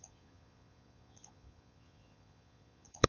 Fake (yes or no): yes